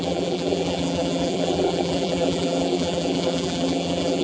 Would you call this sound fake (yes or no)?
yes